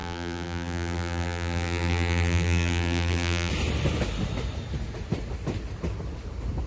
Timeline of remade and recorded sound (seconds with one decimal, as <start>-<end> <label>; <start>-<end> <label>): 0.0-3.5 remade; 3.5-6.7 recorded